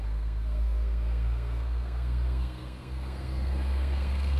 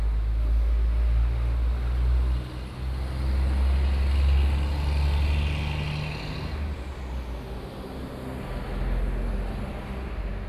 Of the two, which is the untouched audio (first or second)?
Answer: second